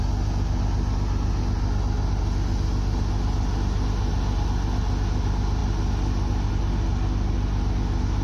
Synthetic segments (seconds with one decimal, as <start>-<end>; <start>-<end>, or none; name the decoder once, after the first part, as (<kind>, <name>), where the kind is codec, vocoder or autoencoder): none